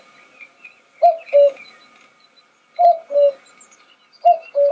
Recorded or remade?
recorded